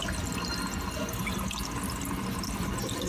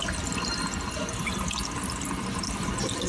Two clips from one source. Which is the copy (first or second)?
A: second